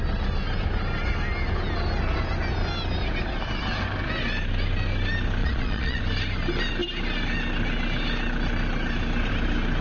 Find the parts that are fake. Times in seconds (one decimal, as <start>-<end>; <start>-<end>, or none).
5.4-6.0